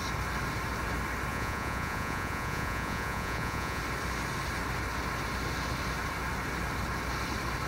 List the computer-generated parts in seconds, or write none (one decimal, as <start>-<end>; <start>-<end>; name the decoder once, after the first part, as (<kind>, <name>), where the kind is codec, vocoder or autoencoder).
1.3-3.8 (vocoder, Vocos)